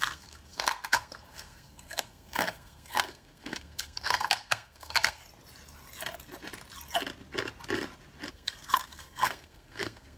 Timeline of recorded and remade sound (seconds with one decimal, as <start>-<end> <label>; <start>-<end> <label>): 0.0-5.2 remade; 5.2-8.3 recorded; 8.3-10.2 remade